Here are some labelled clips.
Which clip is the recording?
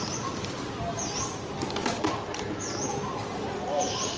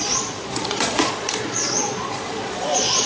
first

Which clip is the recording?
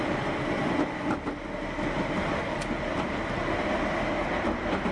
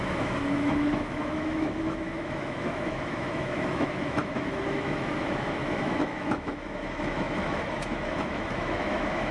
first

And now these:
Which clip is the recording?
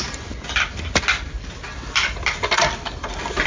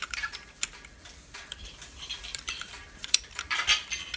first